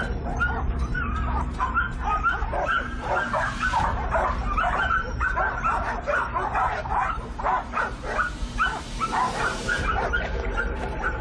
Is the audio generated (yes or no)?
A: yes